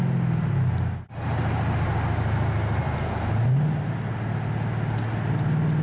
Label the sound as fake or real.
real